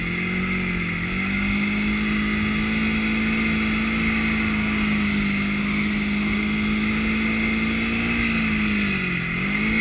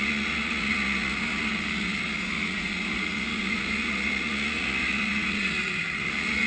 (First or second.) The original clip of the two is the first